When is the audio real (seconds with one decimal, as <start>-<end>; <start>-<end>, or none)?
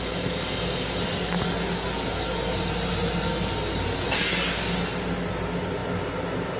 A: 0.0-6.6